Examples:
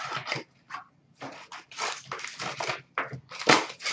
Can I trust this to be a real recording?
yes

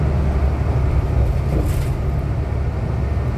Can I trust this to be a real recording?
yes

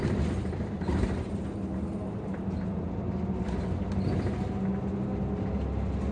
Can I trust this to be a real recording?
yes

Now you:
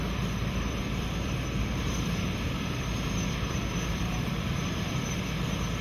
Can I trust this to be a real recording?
no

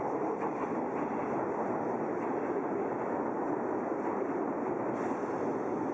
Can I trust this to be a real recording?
yes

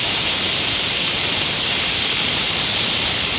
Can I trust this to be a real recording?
no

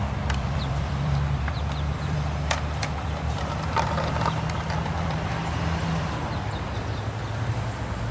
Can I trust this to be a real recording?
no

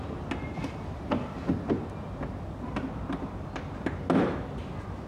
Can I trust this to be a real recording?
yes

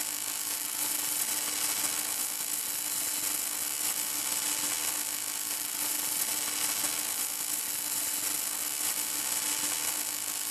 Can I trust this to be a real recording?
yes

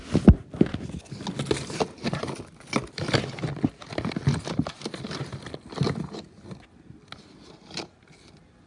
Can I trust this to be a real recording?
yes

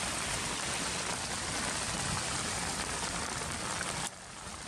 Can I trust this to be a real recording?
yes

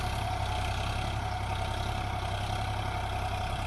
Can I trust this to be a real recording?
yes